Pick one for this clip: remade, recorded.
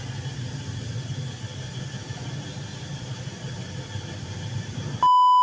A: recorded